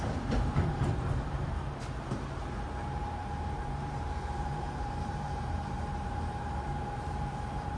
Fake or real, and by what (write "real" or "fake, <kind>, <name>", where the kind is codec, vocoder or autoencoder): fake, vocoder, BigVGAN v2